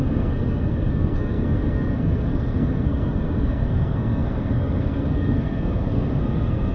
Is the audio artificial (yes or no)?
yes